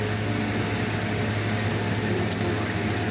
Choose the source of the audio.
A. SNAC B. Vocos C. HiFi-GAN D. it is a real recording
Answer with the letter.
D